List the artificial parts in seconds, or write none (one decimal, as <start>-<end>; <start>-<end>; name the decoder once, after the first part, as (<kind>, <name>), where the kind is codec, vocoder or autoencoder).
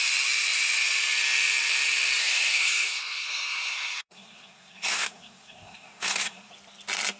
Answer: 2.2-6.5 (codec, SNAC)